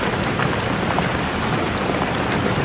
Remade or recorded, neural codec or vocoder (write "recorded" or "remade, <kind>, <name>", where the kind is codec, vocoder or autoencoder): recorded